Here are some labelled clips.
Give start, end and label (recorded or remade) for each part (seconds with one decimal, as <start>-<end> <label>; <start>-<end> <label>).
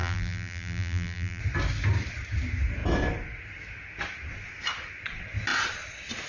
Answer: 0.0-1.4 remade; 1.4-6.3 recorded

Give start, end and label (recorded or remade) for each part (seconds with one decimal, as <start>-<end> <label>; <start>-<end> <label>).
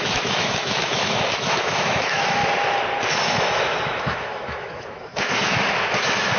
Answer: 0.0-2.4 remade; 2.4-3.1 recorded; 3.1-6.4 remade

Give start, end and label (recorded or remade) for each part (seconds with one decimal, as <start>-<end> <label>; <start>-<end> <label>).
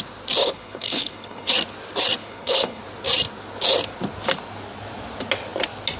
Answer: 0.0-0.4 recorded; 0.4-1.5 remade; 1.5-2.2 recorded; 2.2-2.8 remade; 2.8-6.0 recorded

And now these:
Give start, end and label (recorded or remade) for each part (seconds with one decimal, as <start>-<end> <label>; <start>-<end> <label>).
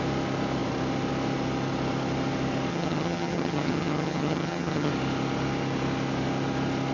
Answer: 0.0-2.7 recorded; 2.7-4.9 remade; 4.9-6.9 recorded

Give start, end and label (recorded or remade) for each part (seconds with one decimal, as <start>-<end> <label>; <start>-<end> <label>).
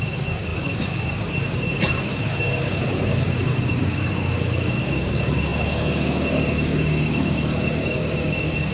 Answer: 0.0-8.7 remade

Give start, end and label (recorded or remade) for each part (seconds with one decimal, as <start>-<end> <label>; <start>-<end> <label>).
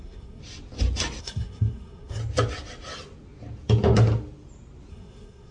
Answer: 0.0-0.4 remade; 0.4-1.2 recorded; 1.2-2.2 remade; 2.2-4.9 recorded; 4.9-5.5 remade